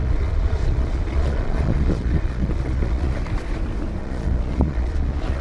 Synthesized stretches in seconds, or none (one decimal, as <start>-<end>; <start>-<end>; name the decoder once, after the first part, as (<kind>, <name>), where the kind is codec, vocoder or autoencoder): 0.0-3.2 (vocoder, Vocos); 4.0-5.4